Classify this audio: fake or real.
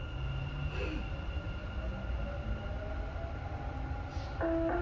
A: real